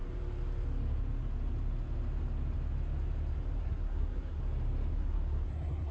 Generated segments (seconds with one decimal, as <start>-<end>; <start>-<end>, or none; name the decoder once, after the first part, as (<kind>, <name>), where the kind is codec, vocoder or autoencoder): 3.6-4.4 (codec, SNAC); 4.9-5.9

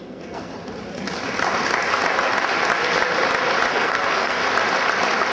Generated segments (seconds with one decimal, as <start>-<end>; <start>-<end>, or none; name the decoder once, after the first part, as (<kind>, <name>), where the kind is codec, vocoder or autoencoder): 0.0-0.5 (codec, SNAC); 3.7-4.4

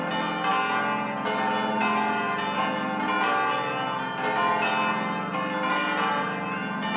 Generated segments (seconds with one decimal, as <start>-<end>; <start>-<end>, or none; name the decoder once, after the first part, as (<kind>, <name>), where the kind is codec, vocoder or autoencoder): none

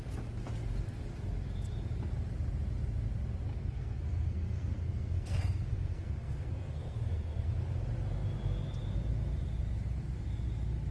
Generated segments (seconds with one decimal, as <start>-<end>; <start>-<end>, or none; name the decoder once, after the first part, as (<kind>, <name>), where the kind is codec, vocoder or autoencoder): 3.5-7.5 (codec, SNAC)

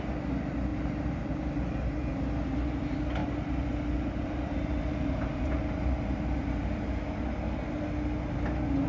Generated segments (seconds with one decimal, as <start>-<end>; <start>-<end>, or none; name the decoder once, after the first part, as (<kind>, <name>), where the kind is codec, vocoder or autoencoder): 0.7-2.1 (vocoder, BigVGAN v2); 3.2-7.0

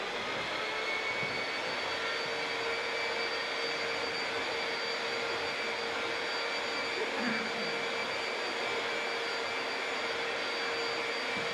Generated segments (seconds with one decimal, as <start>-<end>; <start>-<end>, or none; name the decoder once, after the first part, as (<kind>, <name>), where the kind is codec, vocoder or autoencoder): none

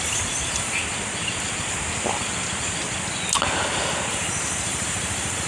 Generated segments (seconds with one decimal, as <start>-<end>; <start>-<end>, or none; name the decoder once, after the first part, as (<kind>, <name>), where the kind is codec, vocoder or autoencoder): 0.0-0.8 (vocoder, BigVGAN v2); 4.1-5.5

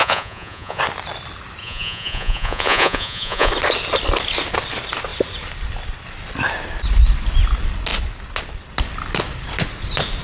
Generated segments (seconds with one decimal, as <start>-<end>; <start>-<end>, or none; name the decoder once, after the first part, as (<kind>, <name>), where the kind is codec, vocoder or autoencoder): 0.0-0.8 (vocoder, Vocos); 1.6-3.5